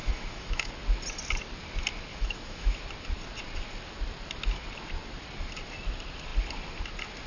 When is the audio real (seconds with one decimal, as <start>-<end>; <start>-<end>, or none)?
0.7-2.1; 2.8-7.3